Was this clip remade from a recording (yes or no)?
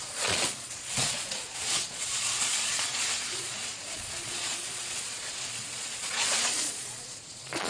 yes